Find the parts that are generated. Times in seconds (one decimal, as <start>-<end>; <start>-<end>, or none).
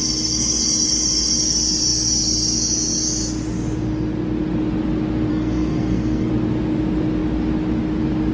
5.3-6.3